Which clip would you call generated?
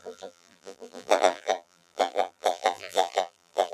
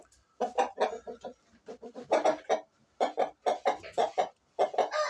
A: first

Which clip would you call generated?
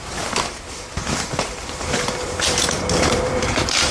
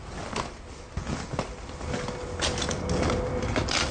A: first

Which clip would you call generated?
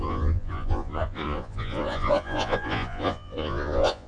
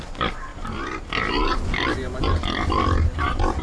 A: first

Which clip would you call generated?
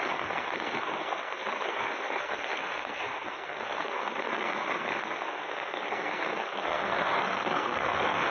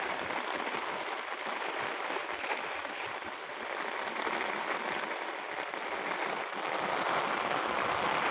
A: first